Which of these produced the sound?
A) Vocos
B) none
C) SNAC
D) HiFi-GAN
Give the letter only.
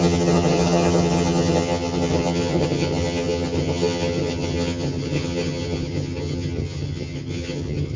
D